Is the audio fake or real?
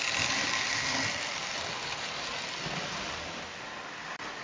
real